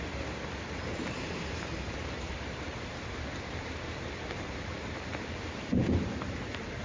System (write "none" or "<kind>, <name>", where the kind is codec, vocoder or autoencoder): vocoder, BigVGAN v2